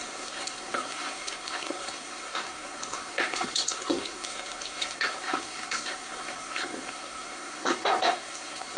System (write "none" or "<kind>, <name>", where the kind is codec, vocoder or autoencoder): codec, SNAC